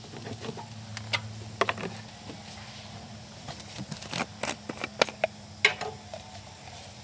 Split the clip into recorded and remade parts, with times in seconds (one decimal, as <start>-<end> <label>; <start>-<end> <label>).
0.0-7.0 recorded